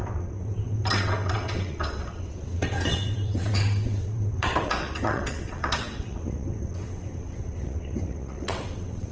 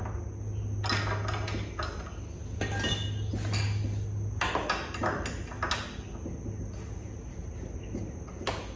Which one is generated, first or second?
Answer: first